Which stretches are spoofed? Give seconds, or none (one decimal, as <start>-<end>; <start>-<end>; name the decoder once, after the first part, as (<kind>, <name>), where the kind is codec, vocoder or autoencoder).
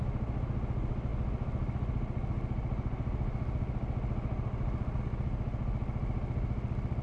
none